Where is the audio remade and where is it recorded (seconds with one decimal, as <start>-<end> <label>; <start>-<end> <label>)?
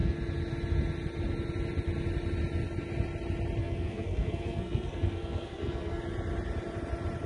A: 0.0-3.6 recorded; 3.6-6.0 remade; 6.0-7.3 recorded